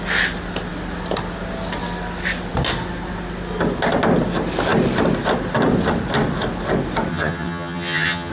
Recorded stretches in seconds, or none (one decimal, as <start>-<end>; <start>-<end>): 0.0-7.1